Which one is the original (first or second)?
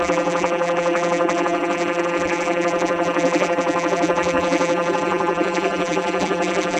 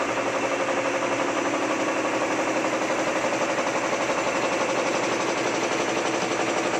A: second